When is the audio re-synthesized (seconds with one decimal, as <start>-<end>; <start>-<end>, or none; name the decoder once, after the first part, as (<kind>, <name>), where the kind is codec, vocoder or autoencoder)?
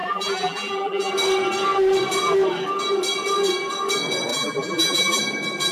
0.0-1.1 (vocoder, BigVGAN v2); 4.3-5.2